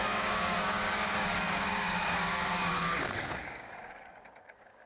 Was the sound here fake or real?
fake